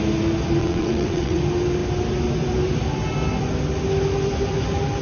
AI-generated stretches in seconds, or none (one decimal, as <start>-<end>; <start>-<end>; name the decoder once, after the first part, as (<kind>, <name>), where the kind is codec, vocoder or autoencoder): 0.6-1.4 (vocoder, WaveNeXt)